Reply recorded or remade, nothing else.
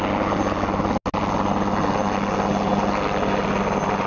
recorded